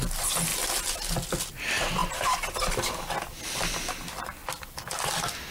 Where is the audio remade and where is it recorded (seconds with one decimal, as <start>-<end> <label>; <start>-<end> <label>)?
0.0-5.5 recorded